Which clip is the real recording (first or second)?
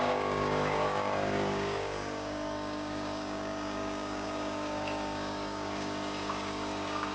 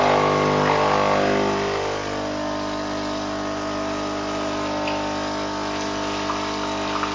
second